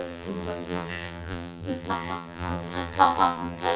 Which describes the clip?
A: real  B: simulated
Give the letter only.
B